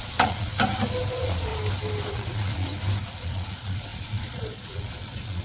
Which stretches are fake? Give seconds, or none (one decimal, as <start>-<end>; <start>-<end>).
0.0-0.5; 1.1-1.5; 2.1-2.7; 3.2-5.4